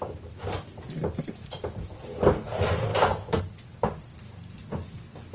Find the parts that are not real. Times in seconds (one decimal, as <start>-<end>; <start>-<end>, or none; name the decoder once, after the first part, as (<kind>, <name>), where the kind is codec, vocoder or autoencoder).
none